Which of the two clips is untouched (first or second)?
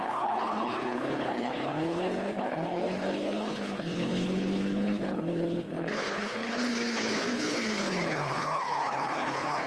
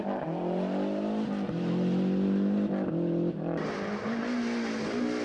second